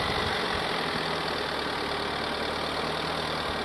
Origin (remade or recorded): recorded